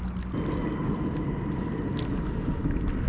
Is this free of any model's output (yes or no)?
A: yes